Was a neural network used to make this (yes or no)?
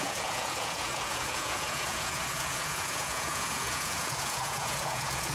yes